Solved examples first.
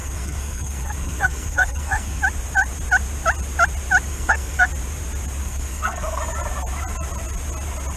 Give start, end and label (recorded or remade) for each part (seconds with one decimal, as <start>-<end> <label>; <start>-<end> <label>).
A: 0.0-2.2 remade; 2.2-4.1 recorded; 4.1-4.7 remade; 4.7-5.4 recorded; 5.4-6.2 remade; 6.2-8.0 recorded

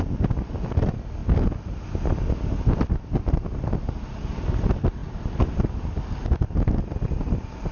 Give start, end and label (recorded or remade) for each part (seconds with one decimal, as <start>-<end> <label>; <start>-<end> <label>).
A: 0.0-7.7 recorded

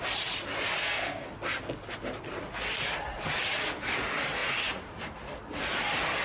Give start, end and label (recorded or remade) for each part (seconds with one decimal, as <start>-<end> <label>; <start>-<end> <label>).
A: 0.0-0.8 recorded; 0.8-1.3 remade; 1.3-6.2 recorded

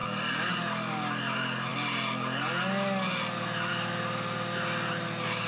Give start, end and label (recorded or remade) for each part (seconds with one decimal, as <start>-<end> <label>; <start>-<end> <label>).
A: 0.0-5.5 recorded

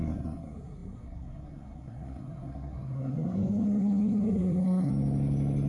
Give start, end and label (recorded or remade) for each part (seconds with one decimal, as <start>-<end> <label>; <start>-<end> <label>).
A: 0.0-4.9 remade; 4.9-5.7 recorded

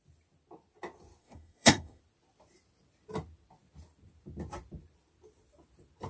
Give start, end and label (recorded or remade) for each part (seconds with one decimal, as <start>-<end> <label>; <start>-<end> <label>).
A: 0.0-1.2 recorded; 1.2-2.0 remade; 2.0-6.1 recorded

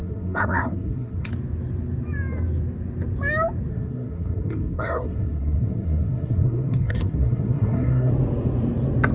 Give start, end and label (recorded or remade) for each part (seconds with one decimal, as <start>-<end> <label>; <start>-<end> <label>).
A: 0.0-1.3 remade; 1.3-3.7 recorded; 3.7-8.1 remade; 8.1-9.1 recorded